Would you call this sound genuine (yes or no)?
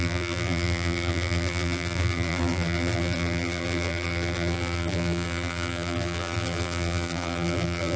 no